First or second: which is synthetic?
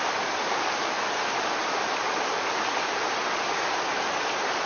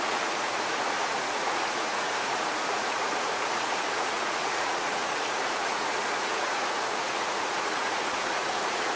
second